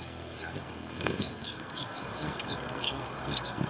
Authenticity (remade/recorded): remade